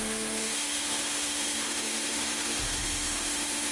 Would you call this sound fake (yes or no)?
yes